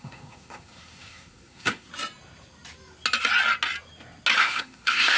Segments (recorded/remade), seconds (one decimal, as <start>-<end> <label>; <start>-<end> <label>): 0.0-1.9 remade; 1.9-4.4 recorded; 4.4-5.2 remade